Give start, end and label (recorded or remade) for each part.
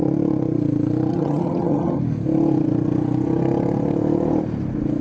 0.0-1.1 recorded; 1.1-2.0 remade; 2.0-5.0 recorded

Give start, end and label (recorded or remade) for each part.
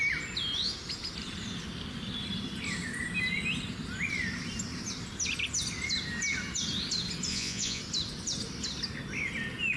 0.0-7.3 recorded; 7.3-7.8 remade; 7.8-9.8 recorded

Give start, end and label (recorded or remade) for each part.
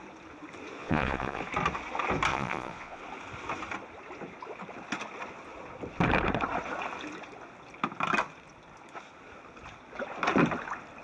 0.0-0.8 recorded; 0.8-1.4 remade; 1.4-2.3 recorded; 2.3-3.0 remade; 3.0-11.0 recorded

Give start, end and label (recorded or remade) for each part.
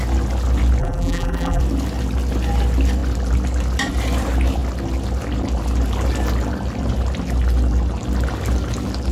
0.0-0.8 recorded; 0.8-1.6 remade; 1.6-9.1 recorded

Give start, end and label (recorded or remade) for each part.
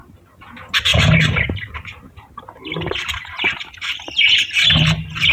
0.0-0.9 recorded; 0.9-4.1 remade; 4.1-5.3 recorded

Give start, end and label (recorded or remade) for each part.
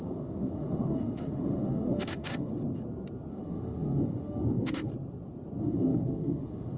0.0-2.5 remade; 2.5-3.3 recorded; 3.3-4.9 remade; 4.9-5.6 recorded; 5.6-6.8 remade